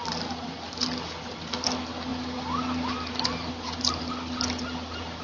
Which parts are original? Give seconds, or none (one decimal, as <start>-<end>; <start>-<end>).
0.0-5.2